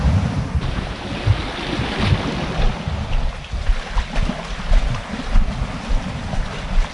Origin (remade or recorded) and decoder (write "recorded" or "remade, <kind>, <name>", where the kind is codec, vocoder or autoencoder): recorded